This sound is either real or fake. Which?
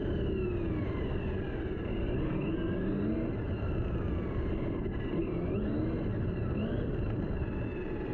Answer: real